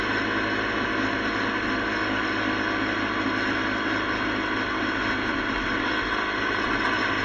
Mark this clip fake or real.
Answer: real